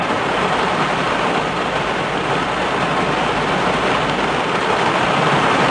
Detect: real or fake real